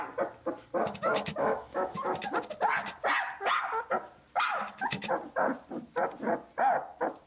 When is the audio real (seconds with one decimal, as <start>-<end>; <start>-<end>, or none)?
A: 0.0-0.8; 2.2-7.3